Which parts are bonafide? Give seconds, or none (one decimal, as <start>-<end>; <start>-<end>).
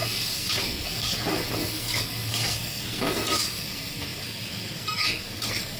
none